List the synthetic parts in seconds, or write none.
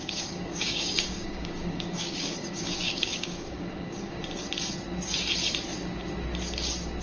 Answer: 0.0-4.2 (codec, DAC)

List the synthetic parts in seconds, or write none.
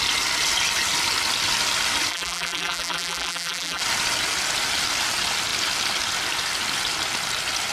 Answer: 2.1-3.8 (vocoder, BigVGAN v2)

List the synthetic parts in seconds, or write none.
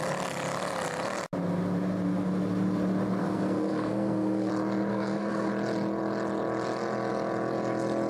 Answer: 3.2-4.5 (codec, SNAC); 4.9-5.5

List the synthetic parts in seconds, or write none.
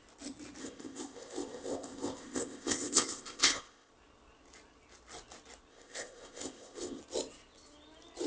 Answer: 0.6-3.9 (codec, ZipCodec); 5.7-7.0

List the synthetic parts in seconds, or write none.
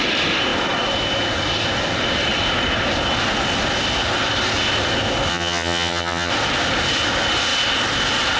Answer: 5.3-6.3 (vocoder, HiFi-GAN)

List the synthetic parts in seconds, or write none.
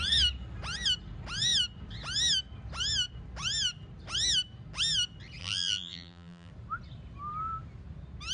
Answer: 5.4-6.5 (vocoder, BigVGAN v2)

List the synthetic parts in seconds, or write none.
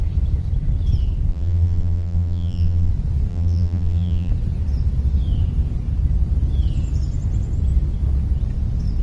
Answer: 1.3-2.9 (vocoder, BigVGAN v2); 3.3-4.3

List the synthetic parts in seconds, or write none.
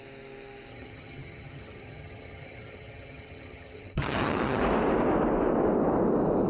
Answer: 0.7-4.6 (vocoder, HiFi-GAN)